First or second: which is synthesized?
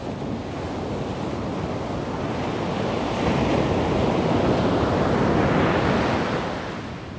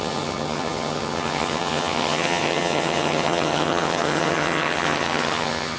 second